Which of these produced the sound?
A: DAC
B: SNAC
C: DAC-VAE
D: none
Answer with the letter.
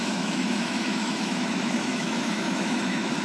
C